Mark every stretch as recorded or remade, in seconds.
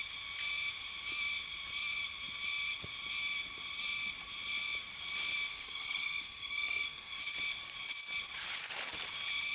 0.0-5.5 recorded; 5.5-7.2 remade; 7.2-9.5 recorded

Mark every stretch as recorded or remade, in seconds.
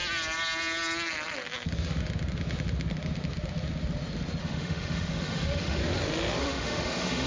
0.0-4.4 recorded; 4.4-5.8 remade; 5.8-6.4 recorded; 6.4-7.3 remade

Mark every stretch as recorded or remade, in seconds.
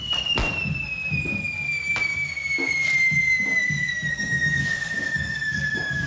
0.0-0.4 remade; 0.4-4.1 recorded; 4.1-6.1 remade